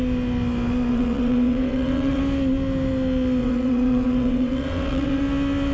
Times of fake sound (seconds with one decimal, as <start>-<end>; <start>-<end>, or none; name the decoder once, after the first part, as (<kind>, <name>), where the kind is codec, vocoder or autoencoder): 0.9-2.2 (vocoder, WaveNeXt); 3.4-5.2